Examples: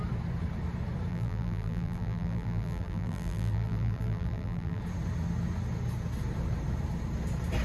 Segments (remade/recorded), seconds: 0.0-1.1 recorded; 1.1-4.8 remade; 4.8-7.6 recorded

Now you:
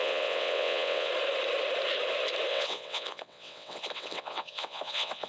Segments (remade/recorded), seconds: 0.0-1.1 remade; 1.1-2.5 recorded; 2.5-5.3 remade

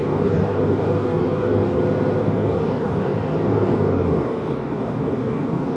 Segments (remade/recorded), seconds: 0.0-1.8 remade; 1.8-2.2 recorded; 2.2-5.8 remade

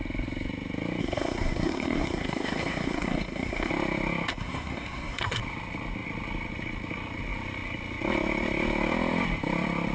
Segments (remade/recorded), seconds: 0.0-1.0 recorded; 1.0-3.7 remade; 3.7-4.3 recorded; 4.3-5.4 remade; 5.4-9.9 recorded

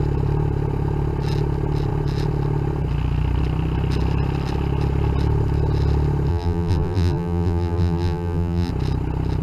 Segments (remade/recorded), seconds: 0.0-6.3 recorded; 6.3-8.7 remade; 8.7-9.4 recorded